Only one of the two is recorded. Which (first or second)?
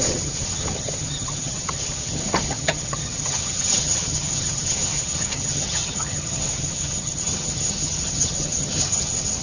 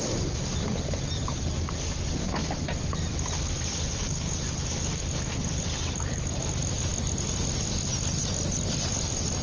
second